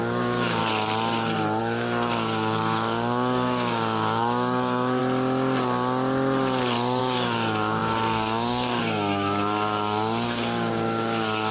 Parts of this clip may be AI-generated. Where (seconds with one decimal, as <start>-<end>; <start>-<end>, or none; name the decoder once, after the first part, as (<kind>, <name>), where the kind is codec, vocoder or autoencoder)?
0.0-0.6 (codec, DAC); 1.6-5.0; 7.0-11.5